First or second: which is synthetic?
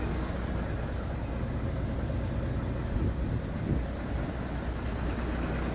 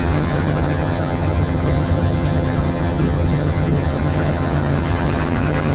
second